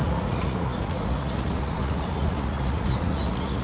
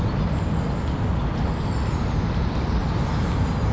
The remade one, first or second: first